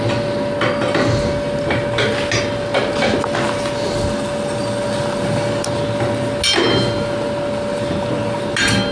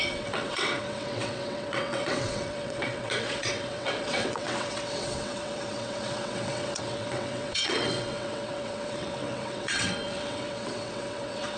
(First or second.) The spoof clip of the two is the second